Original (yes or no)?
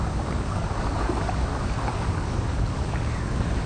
no